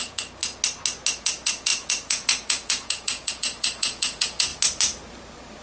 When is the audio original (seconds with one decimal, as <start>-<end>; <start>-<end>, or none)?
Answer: 0.4-1.2; 4.5-5.6